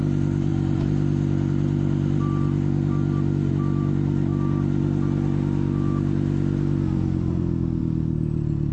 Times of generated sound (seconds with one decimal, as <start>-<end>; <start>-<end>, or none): none